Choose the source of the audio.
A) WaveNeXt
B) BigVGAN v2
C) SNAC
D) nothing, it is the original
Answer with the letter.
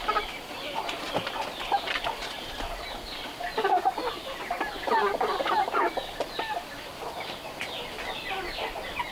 D